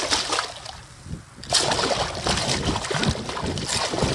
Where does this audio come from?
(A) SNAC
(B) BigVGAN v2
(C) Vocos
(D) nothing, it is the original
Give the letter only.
D